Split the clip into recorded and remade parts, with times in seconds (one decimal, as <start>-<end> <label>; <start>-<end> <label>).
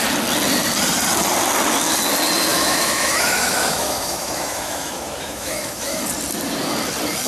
0.0-2.5 recorded; 2.5-6.0 remade; 6.0-7.3 recorded